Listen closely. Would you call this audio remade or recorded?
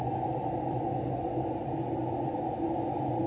recorded